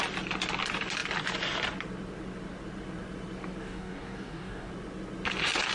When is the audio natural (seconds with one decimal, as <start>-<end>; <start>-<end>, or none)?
0.0-3.6; 4.7-5.7